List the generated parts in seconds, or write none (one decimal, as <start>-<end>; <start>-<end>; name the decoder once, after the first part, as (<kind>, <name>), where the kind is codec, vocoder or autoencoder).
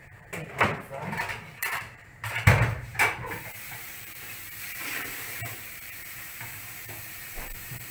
0.0-7.9 (vocoder, BigVGAN v2)